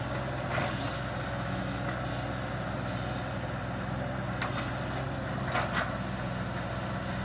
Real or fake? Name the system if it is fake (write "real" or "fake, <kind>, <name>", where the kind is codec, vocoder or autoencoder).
real